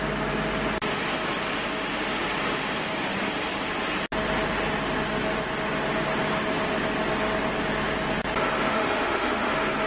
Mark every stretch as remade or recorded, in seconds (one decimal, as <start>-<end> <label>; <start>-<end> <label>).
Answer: 0.0-8.7 recorded; 8.7-9.5 remade; 9.5-9.9 recorded